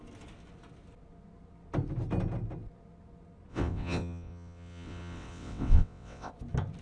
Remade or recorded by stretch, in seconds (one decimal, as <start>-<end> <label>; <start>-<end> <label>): 0.0-3.5 recorded; 3.5-6.3 remade; 6.3-6.8 recorded